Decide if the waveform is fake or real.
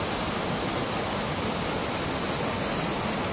real